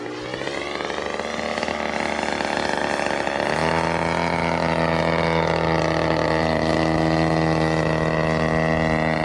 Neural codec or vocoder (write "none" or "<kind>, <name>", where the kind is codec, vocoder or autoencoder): none